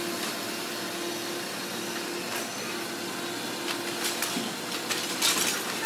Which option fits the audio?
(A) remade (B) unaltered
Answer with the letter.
B